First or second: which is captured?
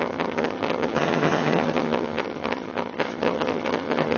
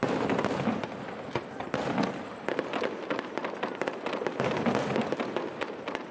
second